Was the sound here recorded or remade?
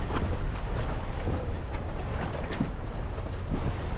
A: recorded